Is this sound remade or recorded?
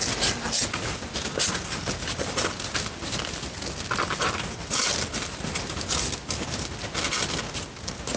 recorded